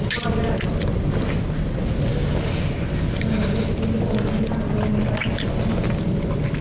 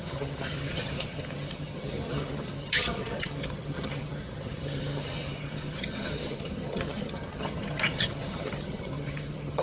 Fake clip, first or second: second